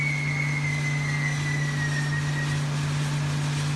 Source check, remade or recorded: recorded